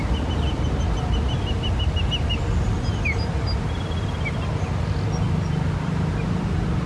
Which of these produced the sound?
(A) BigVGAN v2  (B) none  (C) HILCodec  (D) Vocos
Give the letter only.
B